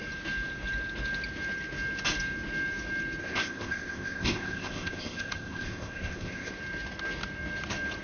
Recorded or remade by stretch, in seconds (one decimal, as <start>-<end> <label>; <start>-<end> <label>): 0.0-3.2 recorded; 3.2-6.5 remade; 6.5-8.0 recorded